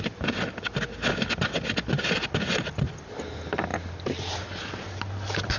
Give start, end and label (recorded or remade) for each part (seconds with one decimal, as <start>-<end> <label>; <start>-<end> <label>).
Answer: 0.0-5.6 recorded